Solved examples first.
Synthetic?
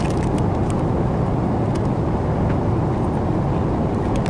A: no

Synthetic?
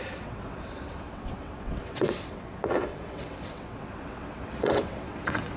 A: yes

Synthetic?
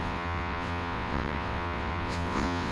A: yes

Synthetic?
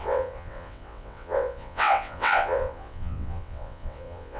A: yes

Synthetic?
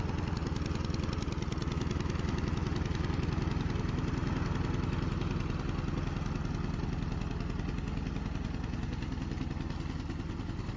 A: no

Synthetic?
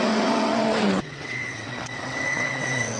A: yes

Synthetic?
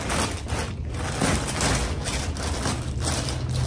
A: no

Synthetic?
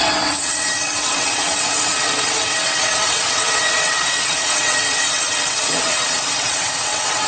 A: yes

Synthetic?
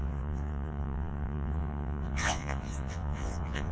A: yes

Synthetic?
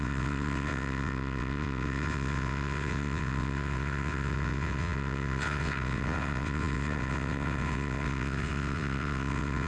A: yes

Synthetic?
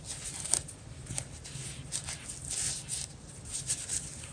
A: no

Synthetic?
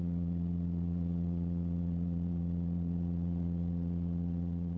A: yes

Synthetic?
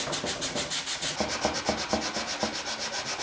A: no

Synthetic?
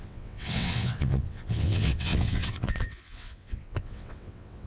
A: yes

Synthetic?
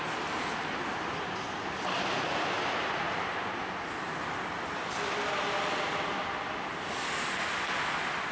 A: no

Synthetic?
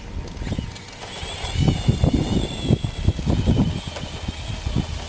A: no